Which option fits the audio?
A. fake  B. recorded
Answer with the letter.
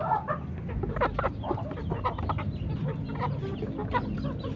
A